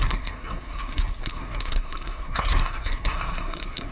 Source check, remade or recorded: remade